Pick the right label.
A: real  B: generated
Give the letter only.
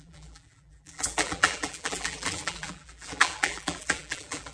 B